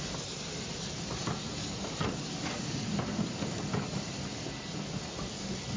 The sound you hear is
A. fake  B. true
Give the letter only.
B